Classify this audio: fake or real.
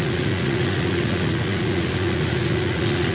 fake